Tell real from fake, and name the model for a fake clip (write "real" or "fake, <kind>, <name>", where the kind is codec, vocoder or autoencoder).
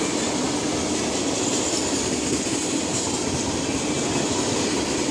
real